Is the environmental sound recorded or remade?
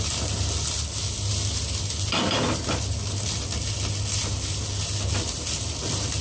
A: recorded